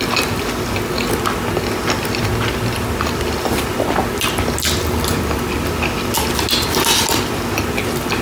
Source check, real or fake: real